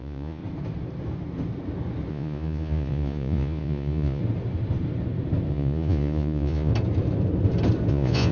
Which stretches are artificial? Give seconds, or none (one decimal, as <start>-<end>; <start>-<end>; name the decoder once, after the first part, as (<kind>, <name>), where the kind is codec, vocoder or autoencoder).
0.0-0.4 (vocoder, Vocos); 2.1-4.2; 5.5-6.7; 7.9-8.3